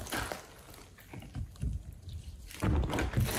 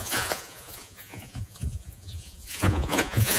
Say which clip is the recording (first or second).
first